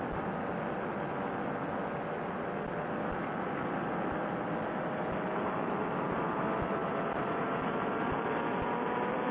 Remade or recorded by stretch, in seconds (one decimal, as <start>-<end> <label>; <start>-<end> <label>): 0.0-9.3 recorded